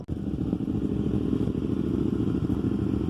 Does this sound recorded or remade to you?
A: recorded